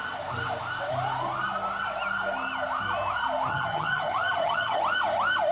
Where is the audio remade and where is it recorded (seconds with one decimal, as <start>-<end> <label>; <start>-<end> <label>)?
0.0-3.5 recorded; 3.5-4.8 remade; 4.8-5.5 recorded